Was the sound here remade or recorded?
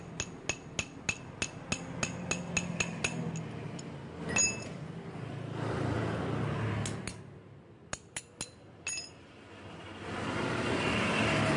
recorded